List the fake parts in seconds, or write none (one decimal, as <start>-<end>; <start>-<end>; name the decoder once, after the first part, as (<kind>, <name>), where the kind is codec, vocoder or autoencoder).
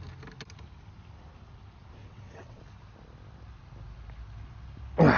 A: 2.0-2.6 (vocoder, WaveNeXt)